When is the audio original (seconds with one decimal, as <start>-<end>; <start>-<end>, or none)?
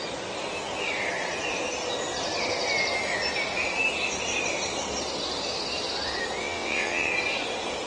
0.0-6.4; 7.1-7.9